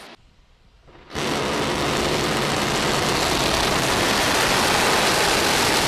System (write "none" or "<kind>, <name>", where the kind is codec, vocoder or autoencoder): none